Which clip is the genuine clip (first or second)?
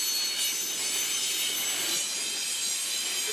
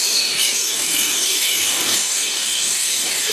first